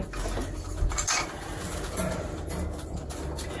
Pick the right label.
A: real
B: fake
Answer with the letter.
A